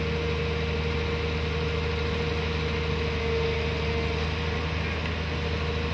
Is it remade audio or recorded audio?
recorded